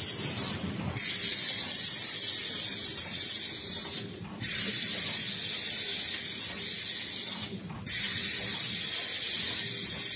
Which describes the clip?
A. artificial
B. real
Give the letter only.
B